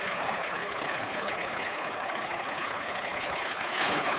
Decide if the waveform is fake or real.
fake